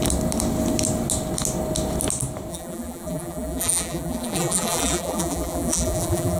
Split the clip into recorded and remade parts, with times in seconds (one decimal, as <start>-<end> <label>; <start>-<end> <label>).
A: 0.0-2.5 recorded; 2.5-6.4 remade